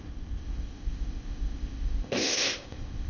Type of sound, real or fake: fake